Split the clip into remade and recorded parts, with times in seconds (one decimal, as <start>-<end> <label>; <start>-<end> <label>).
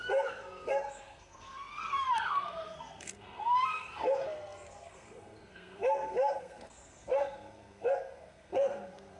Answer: 0.0-9.2 remade